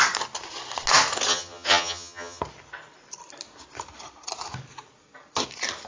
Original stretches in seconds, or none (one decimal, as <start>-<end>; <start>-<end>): 0.0-1.3; 2.4-5.9